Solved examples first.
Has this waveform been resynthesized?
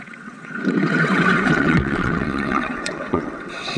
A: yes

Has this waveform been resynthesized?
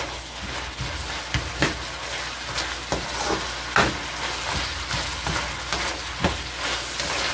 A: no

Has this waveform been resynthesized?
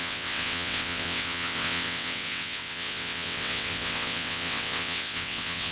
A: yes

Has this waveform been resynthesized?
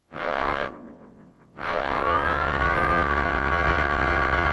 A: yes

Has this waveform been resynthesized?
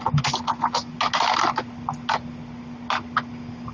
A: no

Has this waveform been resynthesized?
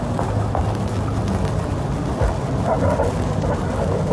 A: no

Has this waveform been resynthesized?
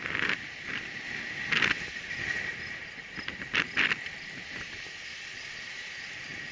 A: no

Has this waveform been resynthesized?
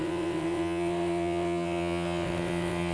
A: yes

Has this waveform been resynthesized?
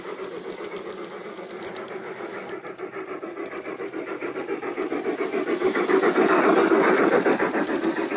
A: no